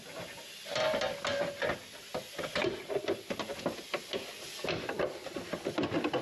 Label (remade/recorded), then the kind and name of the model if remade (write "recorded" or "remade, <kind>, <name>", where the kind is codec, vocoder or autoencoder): recorded